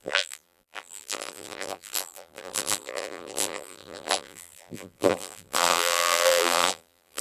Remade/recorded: remade